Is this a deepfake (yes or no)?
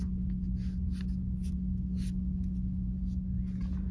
no